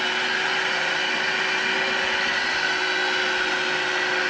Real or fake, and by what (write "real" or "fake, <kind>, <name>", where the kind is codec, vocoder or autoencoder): real